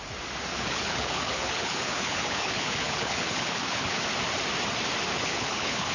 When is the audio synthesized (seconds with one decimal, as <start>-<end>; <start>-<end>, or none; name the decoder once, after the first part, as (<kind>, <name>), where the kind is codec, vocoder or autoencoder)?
0.5-4.0 (codec, HILCodec); 5.1-5.9